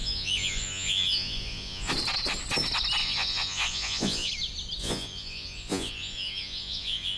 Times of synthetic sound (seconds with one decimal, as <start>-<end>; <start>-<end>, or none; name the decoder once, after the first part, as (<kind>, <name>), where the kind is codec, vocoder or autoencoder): 0.0-1.9 (vocoder, Vocos); 3.0-4.3; 4.8-7.2